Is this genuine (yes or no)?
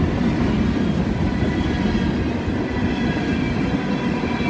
yes